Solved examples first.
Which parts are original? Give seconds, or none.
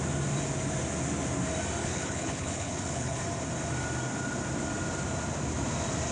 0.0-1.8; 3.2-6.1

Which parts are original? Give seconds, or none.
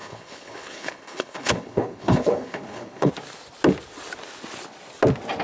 3.1-5.4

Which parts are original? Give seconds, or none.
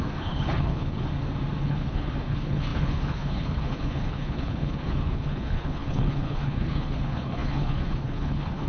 1.1-1.6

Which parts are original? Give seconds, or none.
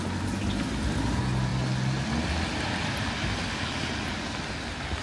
0.0-5.0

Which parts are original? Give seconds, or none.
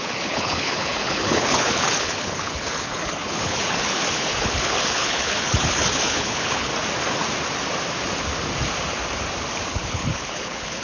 6.7-9.7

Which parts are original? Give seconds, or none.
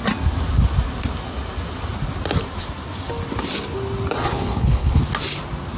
0.0-4.2; 5.0-5.8